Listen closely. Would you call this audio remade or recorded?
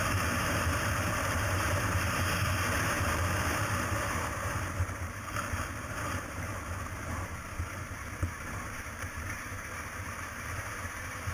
remade